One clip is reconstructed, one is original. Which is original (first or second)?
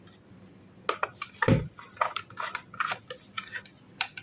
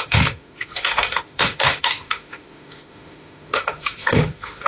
first